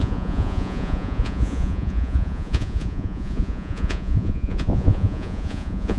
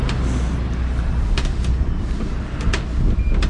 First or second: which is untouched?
second